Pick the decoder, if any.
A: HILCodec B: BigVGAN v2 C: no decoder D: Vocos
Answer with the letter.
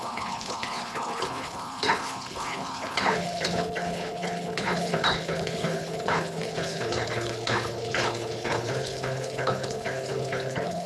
A